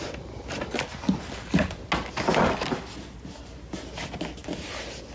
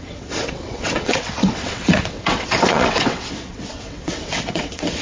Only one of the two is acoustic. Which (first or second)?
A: first